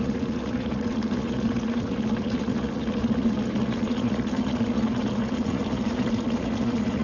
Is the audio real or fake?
fake